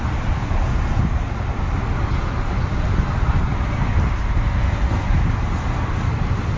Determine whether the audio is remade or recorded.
recorded